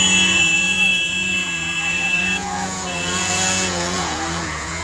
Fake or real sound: fake